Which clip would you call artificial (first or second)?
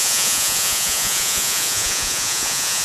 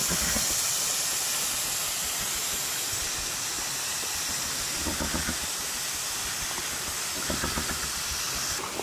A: first